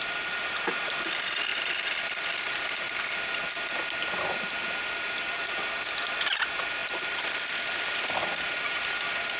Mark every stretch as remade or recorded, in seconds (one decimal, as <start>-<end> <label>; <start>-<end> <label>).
0.0-1.5 recorded; 1.5-2.6 remade; 2.6-6.8 recorded; 6.8-8.0 remade; 8.0-9.4 recorded